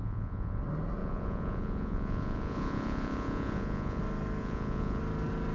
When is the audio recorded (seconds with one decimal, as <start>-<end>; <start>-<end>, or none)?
0.6-1.0; 4.0-4.4; 5.0-5.5

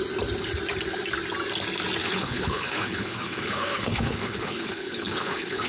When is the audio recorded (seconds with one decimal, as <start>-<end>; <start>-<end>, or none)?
0.0-2.0

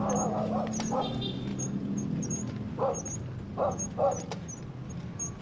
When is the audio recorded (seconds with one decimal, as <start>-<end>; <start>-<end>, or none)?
0.0-5.4

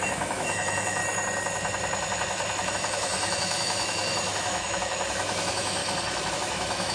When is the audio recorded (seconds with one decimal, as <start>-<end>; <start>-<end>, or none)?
1.0-2.7; 5.8-6.3